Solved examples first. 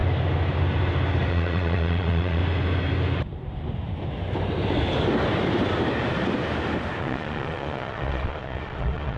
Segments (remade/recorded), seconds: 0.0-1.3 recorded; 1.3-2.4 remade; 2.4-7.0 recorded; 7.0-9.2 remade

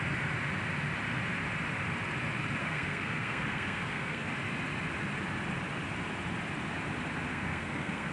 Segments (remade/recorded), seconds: 0.0-2.6 recorded; 2.6-4.3 remade; 4.3-7.3 recorded; 7.3-8.1 remade

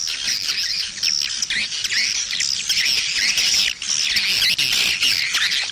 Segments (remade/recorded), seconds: 0.0-5.7 recorded

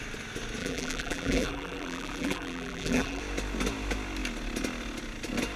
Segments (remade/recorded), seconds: 0.0-0.6 recorded; 0.6-3.2 remade; 3.2-5.6 recorded

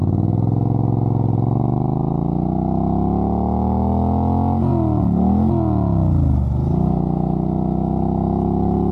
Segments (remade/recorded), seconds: 0.0-8.9 recorded